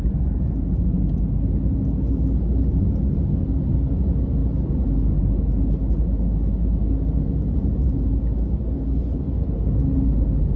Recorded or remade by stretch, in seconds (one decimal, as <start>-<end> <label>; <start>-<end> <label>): 0.0-10.6 recorded